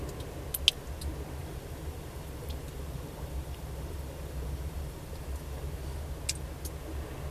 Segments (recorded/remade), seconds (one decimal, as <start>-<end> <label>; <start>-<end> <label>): 0.0-1.4 recorded; 1.4-5.8 remade; 5.8-7.3 recorded